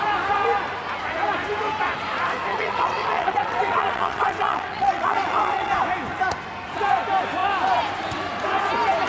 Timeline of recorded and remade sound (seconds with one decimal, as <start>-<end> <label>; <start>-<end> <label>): 0.0-2.5 recorded; 2.5-5.7 remade; 5.7-9.1 recorded